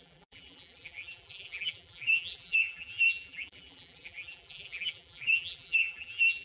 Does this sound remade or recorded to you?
remade